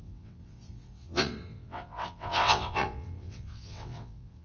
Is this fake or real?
fake